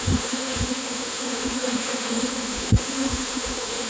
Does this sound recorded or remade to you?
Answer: remade